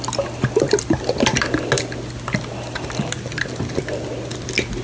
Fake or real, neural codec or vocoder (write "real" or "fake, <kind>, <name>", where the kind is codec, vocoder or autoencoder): real